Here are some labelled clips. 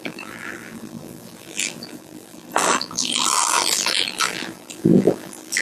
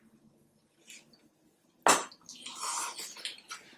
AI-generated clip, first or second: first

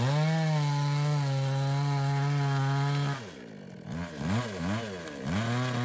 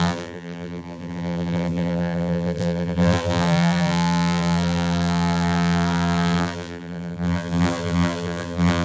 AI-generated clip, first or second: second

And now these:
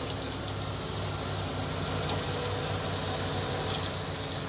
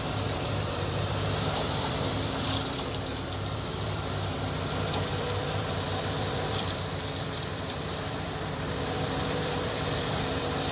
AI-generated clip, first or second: second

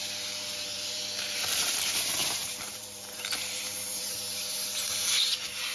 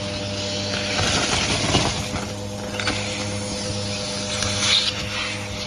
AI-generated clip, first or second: first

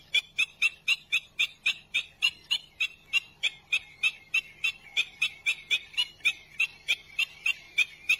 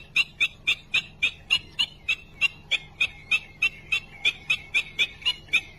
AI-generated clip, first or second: first